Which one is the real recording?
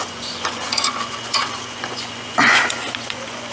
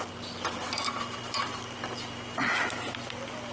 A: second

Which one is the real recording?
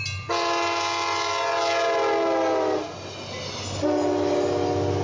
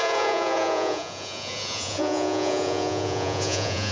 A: first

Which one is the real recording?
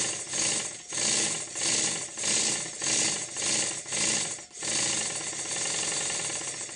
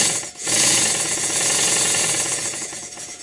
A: first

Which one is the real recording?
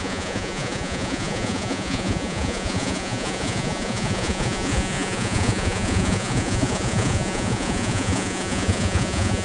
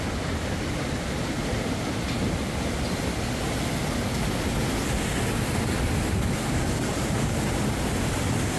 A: second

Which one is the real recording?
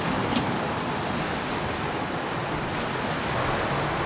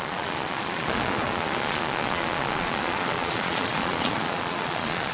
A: first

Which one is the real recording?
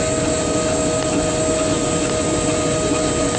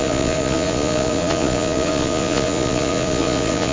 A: first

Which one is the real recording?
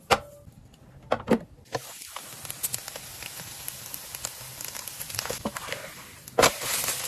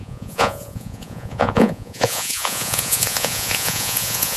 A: first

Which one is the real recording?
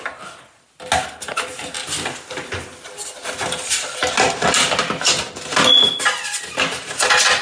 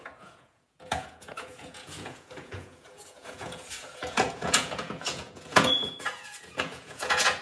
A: first